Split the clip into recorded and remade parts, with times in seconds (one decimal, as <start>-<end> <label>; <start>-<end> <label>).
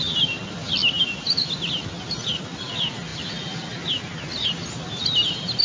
0.0-5.6 recorded